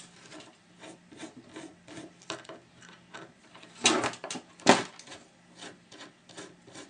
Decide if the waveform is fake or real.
real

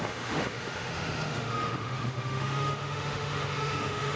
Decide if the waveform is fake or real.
fake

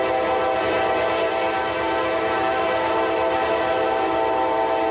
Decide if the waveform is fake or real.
real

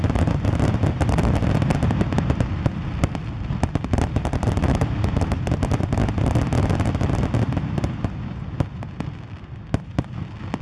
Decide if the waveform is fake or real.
real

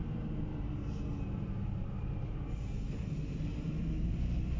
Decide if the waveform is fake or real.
fake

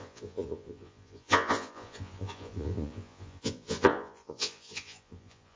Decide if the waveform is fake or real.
fake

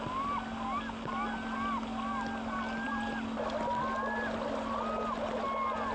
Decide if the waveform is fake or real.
real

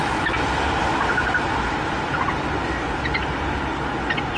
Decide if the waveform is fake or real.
real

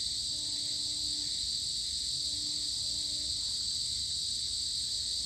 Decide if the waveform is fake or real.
real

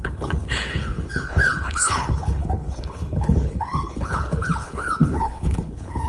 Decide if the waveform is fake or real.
fake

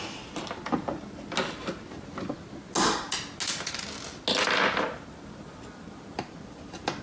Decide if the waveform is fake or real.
real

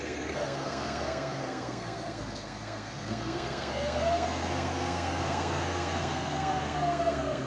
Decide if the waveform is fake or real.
fake